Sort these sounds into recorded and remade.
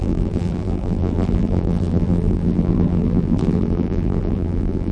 remade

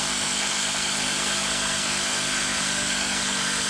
remade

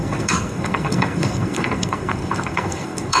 remade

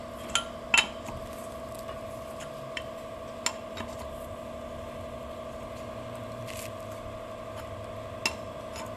recorded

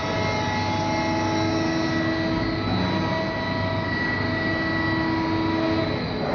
recorded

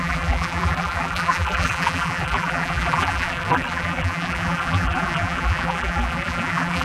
remade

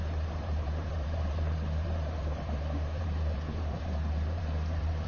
remade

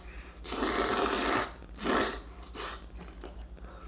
recorded